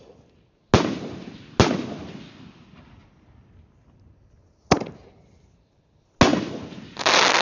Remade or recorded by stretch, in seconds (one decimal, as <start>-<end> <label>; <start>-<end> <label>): 0.0-7.4 recorded